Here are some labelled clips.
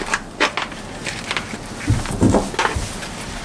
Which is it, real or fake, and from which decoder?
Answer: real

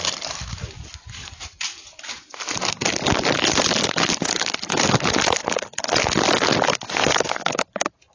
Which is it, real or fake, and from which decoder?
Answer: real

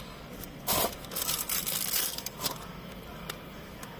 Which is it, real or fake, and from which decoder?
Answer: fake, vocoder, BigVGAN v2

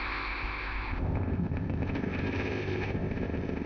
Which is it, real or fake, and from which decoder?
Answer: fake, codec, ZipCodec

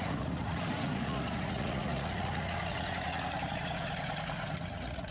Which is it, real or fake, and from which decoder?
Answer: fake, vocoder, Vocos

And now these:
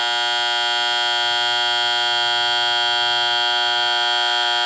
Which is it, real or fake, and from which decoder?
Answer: real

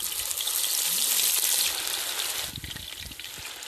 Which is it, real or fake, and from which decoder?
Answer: real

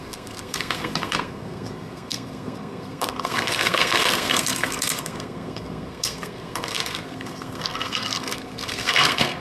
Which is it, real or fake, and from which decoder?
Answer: fake, codec, SNAC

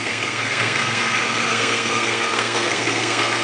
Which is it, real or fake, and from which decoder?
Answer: fake, codec, SNAC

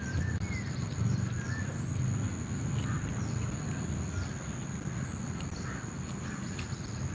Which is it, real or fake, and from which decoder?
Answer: real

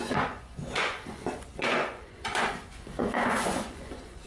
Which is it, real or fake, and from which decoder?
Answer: fake, vocoder, Vocos